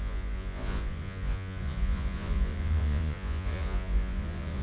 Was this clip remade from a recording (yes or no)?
yes